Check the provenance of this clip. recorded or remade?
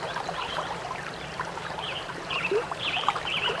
remade